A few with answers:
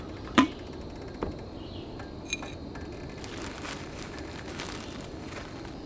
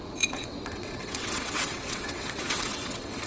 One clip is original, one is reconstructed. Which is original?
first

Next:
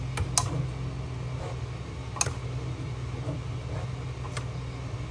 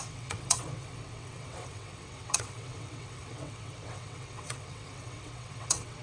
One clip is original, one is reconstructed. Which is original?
first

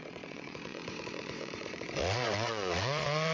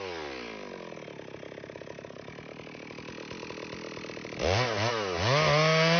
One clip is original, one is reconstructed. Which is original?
second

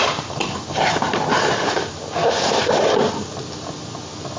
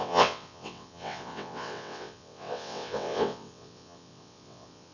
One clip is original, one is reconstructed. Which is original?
first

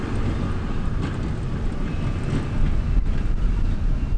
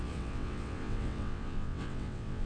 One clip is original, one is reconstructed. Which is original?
first